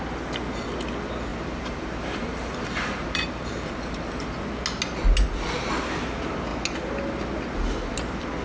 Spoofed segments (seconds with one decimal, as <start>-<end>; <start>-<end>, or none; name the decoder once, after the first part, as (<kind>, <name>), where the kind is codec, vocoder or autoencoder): 1.3-4.3 (vocoder, BigVGAN v2)